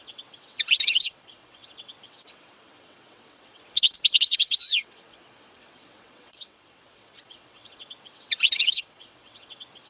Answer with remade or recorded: remade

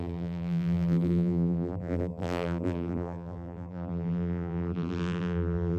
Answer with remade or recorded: remade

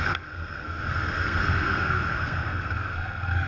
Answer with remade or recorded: remade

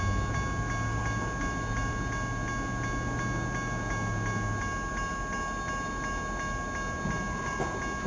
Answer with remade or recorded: recorded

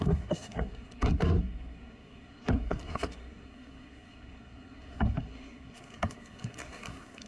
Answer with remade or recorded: remade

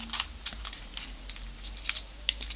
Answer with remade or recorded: recorded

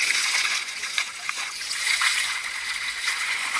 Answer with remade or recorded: remade